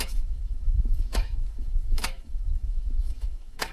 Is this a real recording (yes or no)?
no